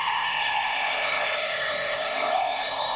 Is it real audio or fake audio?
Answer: fake